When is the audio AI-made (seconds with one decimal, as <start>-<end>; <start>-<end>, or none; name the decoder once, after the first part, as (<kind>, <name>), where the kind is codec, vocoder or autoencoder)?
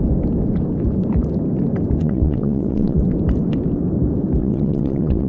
2.0-3.0 (vocoder, WaveNeXt); 4.4-5.3